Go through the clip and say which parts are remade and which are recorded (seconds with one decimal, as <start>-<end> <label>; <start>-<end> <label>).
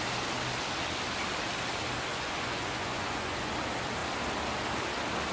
0.0-2.1 recorded; 2.1-3.5 remade; 3.5-5.3 recorded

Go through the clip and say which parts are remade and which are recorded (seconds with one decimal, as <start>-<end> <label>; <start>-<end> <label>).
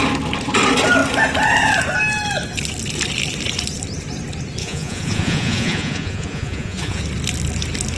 0.0-4.6 recorded; 4.6-7.0 remade; 7.0-8.0 recorded